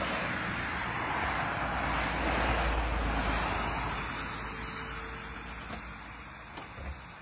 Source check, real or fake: real